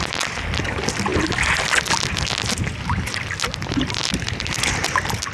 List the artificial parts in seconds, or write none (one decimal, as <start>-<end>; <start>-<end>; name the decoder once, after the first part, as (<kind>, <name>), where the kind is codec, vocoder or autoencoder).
none

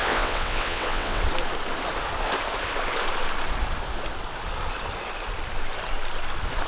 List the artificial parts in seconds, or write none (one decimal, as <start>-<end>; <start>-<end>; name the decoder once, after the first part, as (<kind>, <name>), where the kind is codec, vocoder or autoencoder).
0.0-1.2 (vocoder, WaveNeXt)

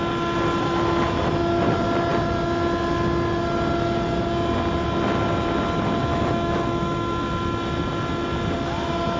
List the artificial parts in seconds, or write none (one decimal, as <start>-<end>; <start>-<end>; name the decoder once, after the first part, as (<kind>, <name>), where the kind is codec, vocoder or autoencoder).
6.0-7.3 (autoencoder, DAC-VAE)

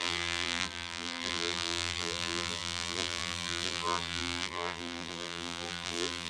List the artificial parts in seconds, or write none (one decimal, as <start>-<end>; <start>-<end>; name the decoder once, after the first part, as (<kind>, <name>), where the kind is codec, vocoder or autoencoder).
0.0-6.3 (vocoder, BigVGAN v2)

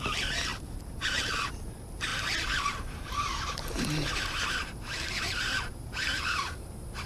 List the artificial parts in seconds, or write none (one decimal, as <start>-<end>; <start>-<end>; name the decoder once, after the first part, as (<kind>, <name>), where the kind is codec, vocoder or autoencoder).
0.5-1.2 (vocoder, BigVGAN v2); 2.1-6.4

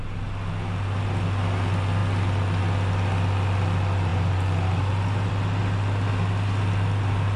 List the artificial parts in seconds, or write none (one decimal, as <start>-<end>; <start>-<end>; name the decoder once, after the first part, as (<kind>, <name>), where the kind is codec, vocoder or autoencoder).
none

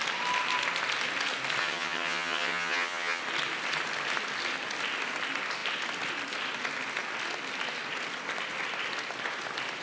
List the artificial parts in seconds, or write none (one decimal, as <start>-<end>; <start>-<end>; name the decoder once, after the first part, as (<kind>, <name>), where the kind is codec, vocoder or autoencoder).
1.6-3.2 (vocoder, HiFi-GAN)